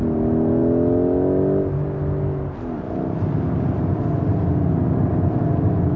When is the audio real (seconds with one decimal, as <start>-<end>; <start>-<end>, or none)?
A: 0.0-6.0